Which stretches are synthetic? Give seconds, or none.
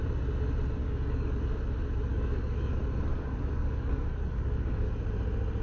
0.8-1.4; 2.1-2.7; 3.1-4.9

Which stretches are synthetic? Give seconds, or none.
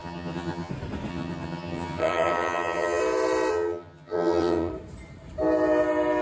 0.0-0.7; 1.1-3.0; 3.5-4.7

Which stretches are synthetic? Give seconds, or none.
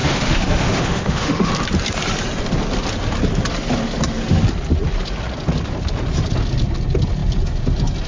0.0-1.5